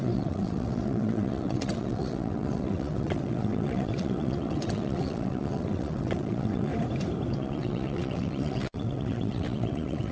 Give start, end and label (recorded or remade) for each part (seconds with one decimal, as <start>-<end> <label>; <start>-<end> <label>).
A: 0.0-6.7 remade; 6.7-7.3 recorded; 7.3-10.1 remade